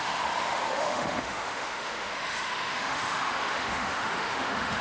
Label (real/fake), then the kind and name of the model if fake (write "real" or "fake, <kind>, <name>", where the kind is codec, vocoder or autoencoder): fake, autoencoder, DAC-VAE